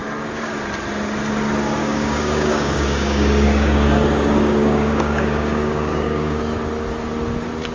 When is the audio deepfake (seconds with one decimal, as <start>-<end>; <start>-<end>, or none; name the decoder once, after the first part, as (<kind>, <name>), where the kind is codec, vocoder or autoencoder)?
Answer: 0.0-0.5 (codec, DAC); 1.8-6.4